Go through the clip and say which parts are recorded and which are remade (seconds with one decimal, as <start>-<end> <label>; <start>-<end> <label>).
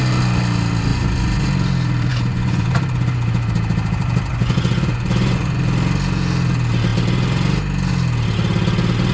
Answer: 0.0-0.9 recorded; 0.9-1.5 remade; 1.5-2.1 recorded; 2.1-2.7 remade; 2.7-4.3 recorded; 4.3-5.6 remade; 5.6-9.1 recorded